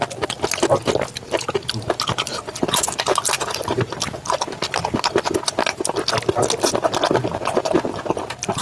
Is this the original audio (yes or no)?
yes